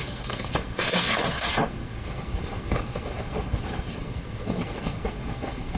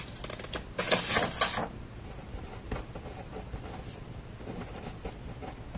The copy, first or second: first